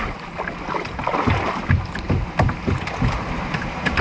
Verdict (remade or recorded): recorded